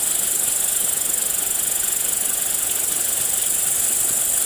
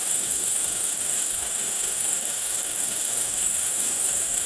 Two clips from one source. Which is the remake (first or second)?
second